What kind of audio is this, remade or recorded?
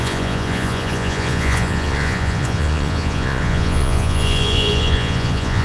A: remade